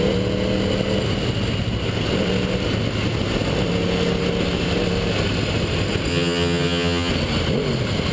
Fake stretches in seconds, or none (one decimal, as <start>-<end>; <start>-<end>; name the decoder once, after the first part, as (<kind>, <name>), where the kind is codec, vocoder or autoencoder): 6.1-7.1 (vocoder, HiFi-GAN)